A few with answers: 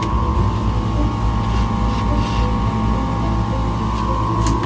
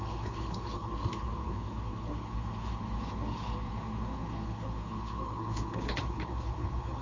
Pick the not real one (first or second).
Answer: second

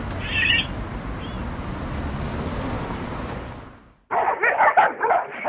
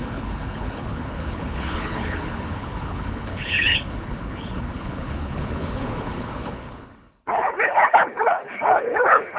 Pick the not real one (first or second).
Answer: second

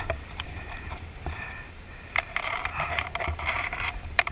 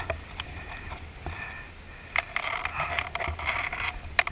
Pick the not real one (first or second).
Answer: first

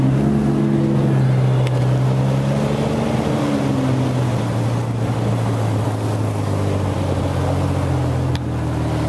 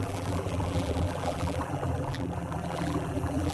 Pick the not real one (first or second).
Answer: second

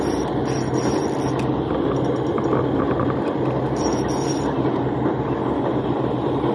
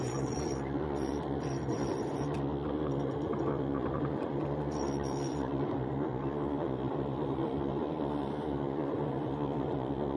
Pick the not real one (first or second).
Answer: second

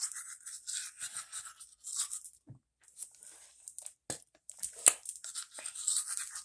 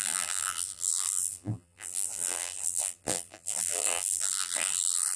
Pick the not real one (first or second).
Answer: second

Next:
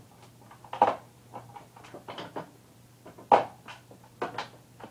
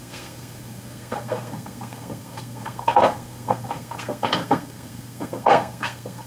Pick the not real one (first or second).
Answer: second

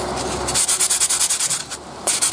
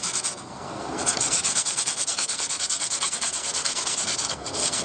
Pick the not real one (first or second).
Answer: second